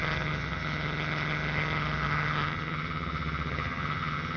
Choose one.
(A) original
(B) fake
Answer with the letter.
B